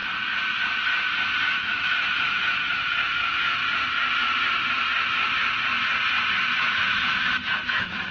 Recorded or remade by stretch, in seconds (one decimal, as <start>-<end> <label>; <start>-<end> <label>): 0.0-1.5 recorded; 1.5-3.6 remade; 3.6-6.6 recorded; 6.6-8.1 remade